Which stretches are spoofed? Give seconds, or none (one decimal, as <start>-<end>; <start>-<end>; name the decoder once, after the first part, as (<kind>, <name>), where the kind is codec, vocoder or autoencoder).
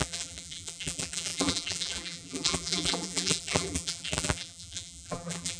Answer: 0.0-5.6 (vocoder, BigVGAN v2)